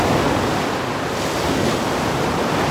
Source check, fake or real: real